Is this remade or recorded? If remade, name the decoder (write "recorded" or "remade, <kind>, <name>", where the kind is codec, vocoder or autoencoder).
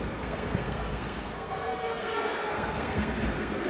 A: remade, codec, SNAC